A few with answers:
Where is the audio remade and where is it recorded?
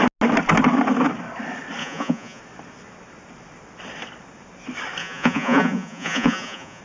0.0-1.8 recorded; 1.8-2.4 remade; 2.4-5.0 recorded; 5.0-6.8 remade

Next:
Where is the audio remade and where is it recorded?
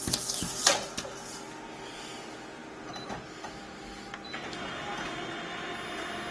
0.0-6.3 recorded